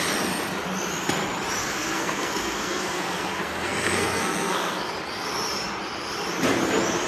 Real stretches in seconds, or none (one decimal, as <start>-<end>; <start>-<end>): 0.0-1.6; 4.9-7.1